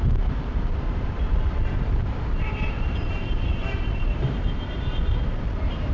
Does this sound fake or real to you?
fake